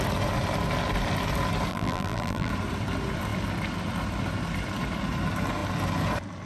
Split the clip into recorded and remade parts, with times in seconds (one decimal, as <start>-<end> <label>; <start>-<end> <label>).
0.0-1.7 recorded; 1.7-2.5 remade; 2.5-6.5 recorded